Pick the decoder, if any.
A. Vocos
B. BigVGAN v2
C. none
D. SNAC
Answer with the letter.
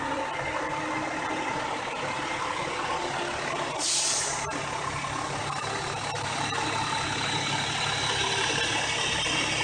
C